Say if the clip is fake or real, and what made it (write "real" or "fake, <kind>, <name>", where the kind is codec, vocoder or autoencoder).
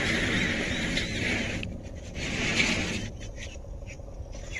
real